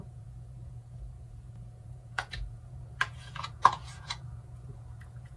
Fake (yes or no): yes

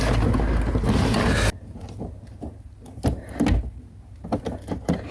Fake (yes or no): no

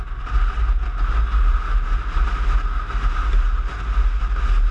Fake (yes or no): no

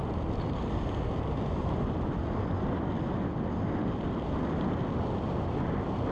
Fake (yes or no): no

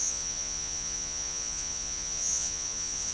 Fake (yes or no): yes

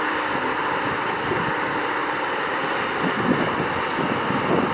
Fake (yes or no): no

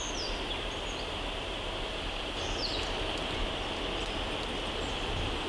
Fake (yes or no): no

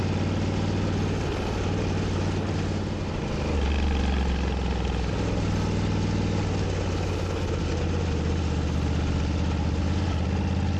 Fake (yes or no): no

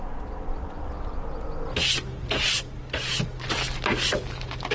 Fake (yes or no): no